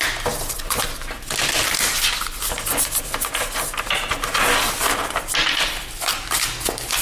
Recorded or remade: recorded